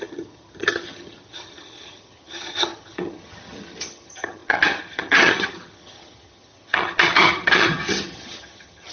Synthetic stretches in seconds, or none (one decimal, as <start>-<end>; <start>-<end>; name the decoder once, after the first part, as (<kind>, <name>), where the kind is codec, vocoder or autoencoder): 0.0-8.9 (vocoder, HiFi-GAN)